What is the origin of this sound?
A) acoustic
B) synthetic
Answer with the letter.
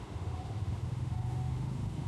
B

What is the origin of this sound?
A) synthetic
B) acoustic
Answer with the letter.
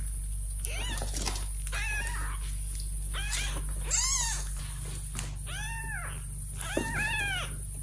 B